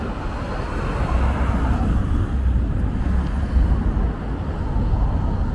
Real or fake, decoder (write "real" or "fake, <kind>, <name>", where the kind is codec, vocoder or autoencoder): real